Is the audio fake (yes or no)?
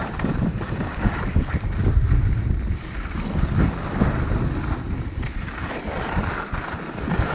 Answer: no